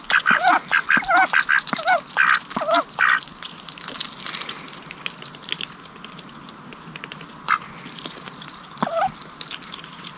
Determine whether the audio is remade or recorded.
recorded